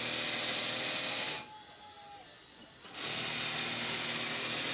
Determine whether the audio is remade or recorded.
recorded